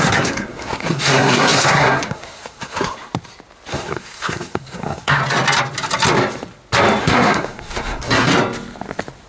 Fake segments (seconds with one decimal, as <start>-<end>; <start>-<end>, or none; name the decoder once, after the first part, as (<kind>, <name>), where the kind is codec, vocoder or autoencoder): 0.0-3.1 (codec, SNAC); 3.7-5.2; 7.0-8.3